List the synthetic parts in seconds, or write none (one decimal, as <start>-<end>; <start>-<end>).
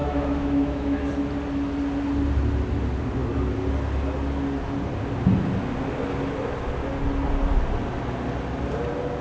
0.0-1.1